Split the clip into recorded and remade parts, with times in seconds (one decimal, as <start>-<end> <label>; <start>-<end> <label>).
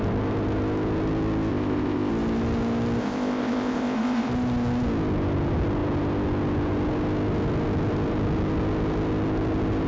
0.0-1.5 recorded; 1.5-2.1 remade; 2.1-3.0 recorded; 3.0-4.3 remade; 4.3-9.9 recorded